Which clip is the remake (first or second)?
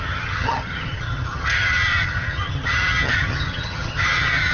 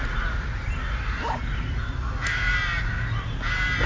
first